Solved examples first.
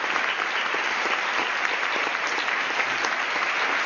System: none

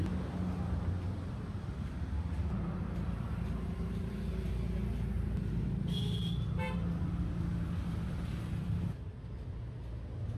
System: none